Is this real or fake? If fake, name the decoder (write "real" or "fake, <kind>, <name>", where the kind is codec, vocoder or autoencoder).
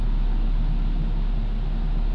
real